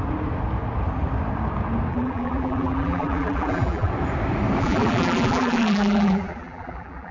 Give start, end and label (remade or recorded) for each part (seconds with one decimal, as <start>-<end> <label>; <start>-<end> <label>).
0.0-1.9 recorded; 1.9-3.9 remade; 3.9-4.6 recorded; 4.6-7.1 remade